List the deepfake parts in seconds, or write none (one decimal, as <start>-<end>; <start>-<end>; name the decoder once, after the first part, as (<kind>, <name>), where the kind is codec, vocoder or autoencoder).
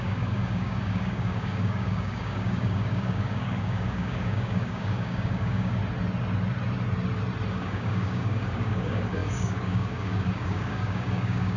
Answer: 0.0-5.8 (codec, DAC); 7.5-11.6